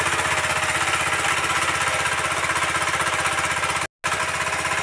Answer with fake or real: real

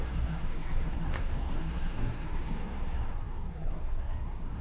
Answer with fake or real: fake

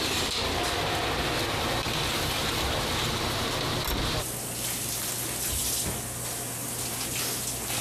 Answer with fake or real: real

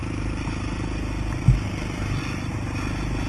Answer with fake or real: real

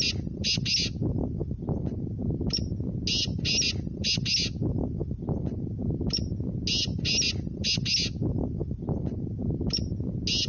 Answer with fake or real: real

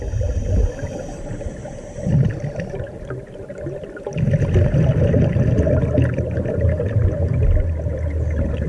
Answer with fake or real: real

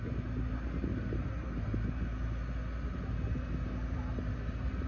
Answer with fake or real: real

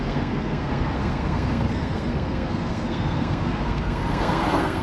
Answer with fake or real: fake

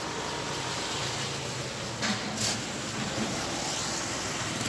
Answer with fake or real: real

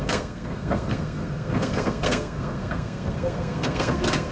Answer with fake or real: fake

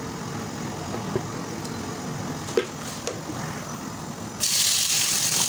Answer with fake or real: real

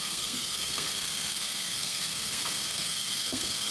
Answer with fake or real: fake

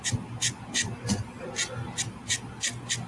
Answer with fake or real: real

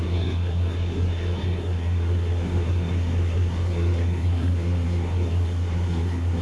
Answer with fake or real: fake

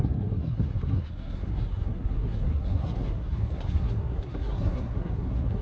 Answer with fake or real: fake